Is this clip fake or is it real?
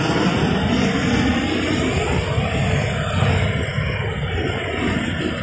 real